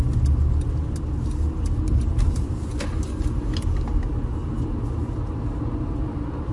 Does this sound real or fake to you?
real